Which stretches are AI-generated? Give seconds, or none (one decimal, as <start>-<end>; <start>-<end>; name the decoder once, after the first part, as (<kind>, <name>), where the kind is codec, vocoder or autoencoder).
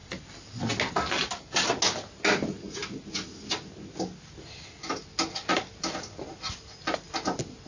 none